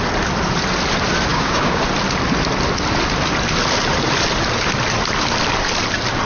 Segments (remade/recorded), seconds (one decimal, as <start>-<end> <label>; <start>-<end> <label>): 0.0-1.3 recorded; 1.3-1.8 remade; 1.8-6.3 recorded